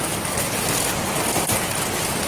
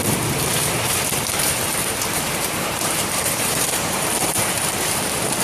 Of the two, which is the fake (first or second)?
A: second